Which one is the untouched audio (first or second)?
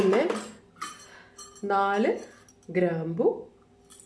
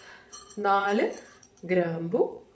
first